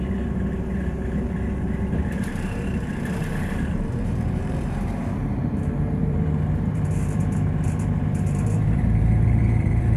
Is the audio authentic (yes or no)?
no